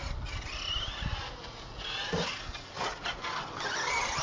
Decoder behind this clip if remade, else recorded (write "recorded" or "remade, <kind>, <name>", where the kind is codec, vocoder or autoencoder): recorded